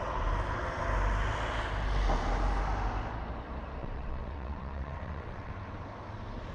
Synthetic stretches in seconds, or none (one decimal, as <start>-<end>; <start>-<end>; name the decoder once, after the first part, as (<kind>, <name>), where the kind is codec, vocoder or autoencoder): 3.8-5.5 (vocoder, WaveNeXt)